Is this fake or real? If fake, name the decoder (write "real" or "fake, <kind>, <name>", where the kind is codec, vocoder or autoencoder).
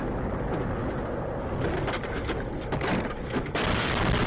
real